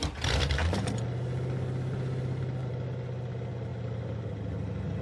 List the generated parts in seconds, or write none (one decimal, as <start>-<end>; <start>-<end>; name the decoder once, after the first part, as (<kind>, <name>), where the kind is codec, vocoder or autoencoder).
none